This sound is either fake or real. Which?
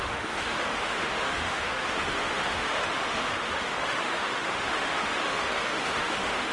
fake